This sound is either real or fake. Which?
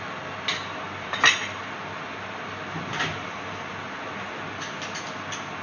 real